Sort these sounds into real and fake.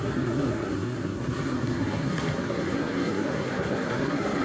fake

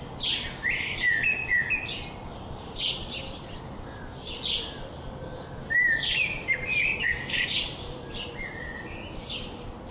real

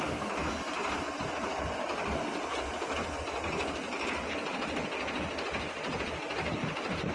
real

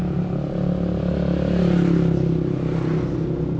real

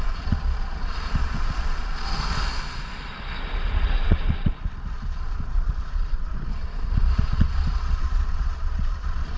fake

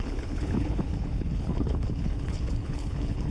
fake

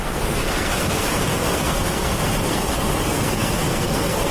fake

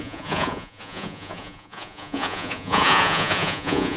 fake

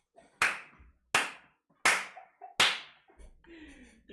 real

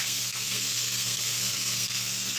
fake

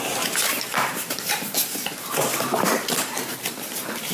real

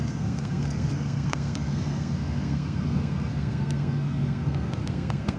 fake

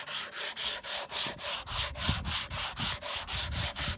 real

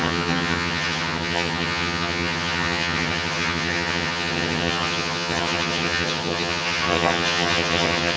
fake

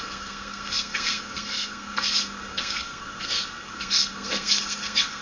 fake